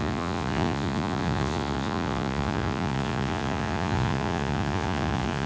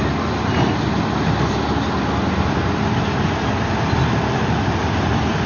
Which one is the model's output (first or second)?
first